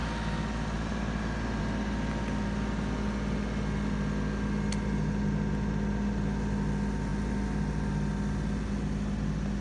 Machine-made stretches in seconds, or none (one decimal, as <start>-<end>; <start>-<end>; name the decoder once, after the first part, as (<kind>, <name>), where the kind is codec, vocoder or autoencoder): none